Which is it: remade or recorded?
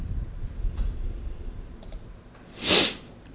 recorded